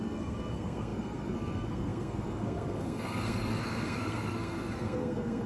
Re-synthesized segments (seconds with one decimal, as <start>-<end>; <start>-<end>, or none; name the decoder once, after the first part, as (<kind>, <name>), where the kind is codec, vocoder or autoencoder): 0.0-5.5 (codec, SNAC)